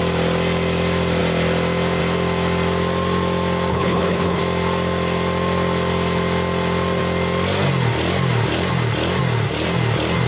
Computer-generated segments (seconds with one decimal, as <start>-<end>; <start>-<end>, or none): 3.7-4.4